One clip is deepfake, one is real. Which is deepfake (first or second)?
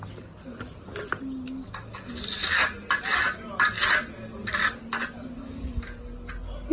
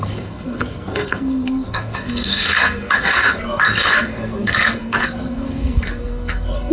second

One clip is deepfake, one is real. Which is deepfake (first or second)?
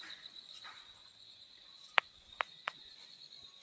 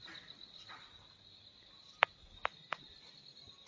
first